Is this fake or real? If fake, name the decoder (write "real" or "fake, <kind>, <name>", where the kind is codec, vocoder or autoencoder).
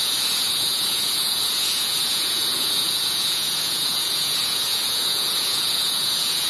fake, vocoder, Vocos